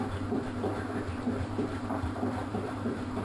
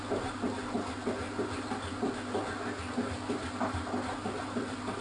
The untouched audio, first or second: second